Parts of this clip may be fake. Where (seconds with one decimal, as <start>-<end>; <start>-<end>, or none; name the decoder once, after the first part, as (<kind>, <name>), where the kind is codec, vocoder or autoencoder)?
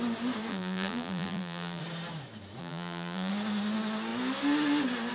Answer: 0.5-1.8 (vocoder, BigVGAN v2); 2.6-3.3